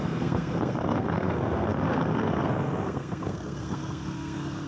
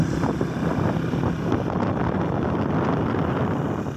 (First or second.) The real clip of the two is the second